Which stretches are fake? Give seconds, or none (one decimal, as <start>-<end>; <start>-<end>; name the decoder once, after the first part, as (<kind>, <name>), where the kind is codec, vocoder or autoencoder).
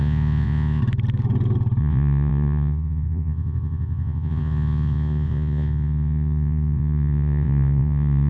0.0-0.8 (vocoder, Vocos); 1.8-8.3